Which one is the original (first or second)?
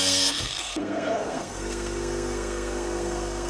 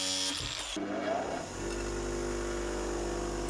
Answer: second